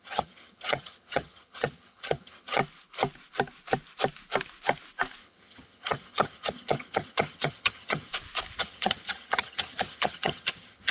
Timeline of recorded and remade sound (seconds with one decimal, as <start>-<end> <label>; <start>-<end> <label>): 0.0-2.6 remade; 2.6-5.2 recorded; 5.2-8.1 remade; 8.1-8.6 recorded; 8.6-10.9 remade